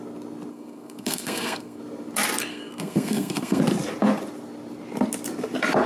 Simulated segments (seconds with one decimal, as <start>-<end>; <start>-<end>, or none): 0.5-1.8; 2.5-3.6